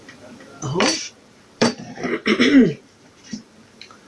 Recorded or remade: remade